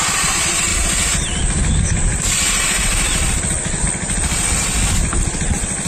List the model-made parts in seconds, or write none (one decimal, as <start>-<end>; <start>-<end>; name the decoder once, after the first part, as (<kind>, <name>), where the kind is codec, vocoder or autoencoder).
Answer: none